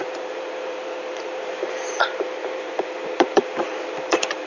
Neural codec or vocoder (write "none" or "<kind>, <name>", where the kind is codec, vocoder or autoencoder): vocoder, BigVGAN v2